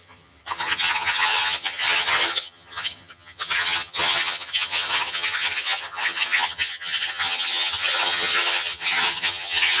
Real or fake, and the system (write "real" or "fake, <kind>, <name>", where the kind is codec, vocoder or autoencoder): fake, vocoder, HiFi-GAN